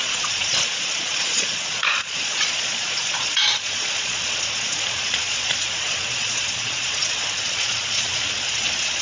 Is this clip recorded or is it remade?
remade